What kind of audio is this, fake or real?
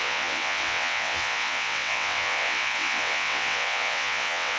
fake